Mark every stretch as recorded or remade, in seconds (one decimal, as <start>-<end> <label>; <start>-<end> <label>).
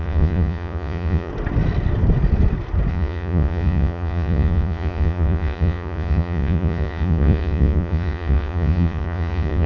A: 0.0-1.3 remade; 1.3-2.9 recorded; 2.9-9.7 remade